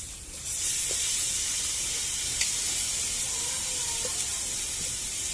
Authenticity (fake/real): real